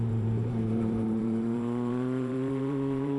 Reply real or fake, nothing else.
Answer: fake